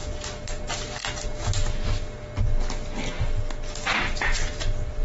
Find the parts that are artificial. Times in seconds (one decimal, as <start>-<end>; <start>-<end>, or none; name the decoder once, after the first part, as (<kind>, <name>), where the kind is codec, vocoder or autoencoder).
none